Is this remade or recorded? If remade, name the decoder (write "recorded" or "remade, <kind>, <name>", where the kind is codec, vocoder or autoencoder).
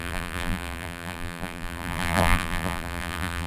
remade, vocoder, BigVGAN v2